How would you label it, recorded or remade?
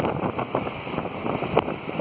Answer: remade